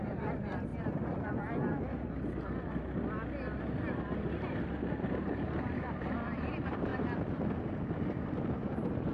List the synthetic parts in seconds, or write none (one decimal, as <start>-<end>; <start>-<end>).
0.0-0.7; 4.8-6.9; 8.2-9.1